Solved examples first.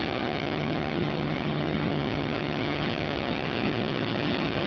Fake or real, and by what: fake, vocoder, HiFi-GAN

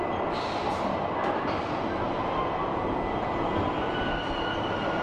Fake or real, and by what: real